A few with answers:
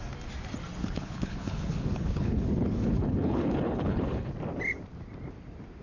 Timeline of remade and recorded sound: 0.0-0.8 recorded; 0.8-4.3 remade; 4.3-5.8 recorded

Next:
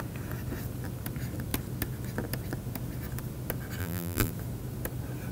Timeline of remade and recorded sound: 0.0-3.8 recorded; 3.8-4.3 remade; 4.3-5.3 recorded

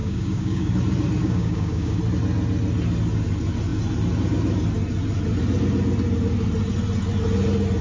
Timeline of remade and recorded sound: 0.0-0.7 remade; 0.7-1.2 recorded; 1.2-2.0 remade; 2.0-7.8 recorded